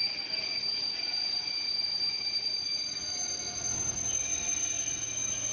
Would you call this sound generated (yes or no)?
no